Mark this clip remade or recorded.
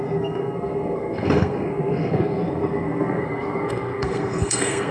remade